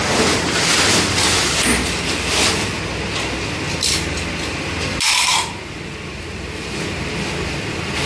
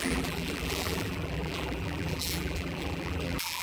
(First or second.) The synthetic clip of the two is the second